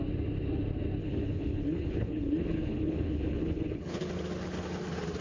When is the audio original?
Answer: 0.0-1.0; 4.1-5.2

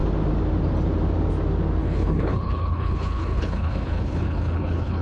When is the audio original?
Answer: 0.0-1.8

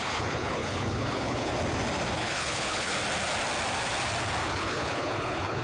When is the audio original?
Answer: 1.5-2.1; 2.9-4.5

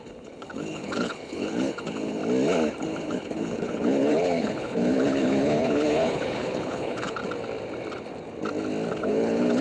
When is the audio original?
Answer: 2.2-2.8; 7.2-8.9

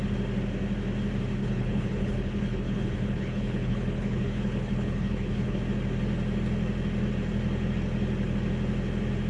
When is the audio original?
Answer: 0.0-1.4; 5.6-9.3